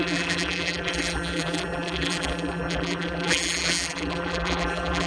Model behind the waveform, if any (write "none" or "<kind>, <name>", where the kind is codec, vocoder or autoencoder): vocoder, BigVGAN v2